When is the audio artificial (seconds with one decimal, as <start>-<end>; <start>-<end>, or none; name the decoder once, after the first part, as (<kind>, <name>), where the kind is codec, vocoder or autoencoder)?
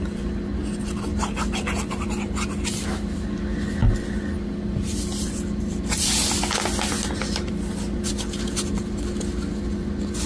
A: none